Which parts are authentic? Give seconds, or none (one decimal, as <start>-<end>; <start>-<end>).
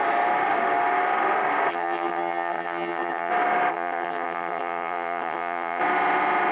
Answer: 0.0-1.7; 3.3-3.7; 5.8-6.5